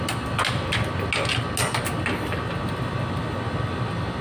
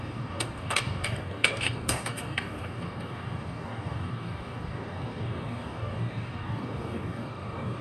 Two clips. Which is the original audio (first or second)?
first